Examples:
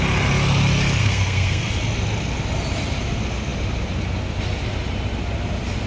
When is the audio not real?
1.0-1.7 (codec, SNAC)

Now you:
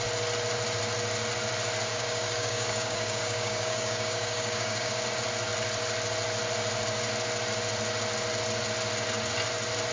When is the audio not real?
1.9-4.9 (codec, DAC)

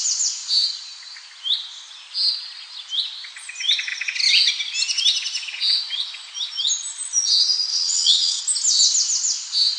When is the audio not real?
7.7-8.4 (vocoder, WaveNeXt)

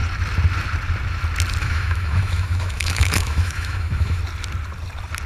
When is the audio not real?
1.6-4.2 (autoencoder, DAC-VAE)